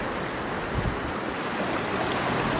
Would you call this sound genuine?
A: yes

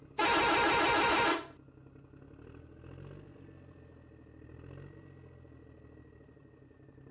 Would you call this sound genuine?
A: yes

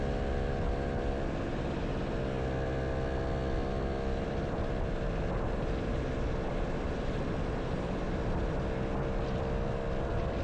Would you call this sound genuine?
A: yes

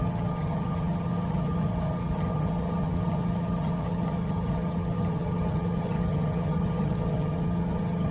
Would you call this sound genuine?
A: no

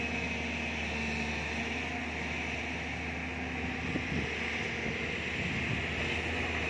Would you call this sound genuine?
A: yes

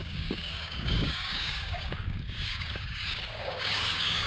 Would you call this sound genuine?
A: no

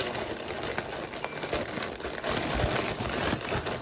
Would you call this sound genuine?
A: yes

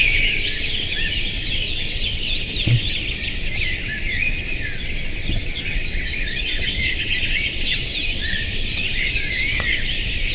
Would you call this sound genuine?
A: no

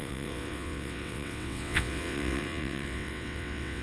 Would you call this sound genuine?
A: no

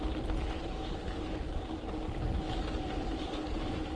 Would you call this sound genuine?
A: yes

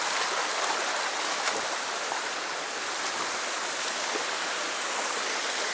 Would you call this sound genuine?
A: yes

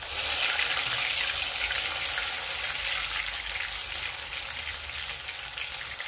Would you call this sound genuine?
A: yes